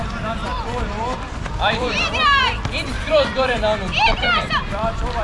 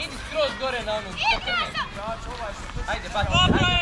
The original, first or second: second